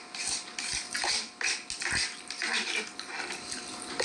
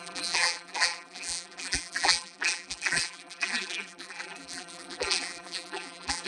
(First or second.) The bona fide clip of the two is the first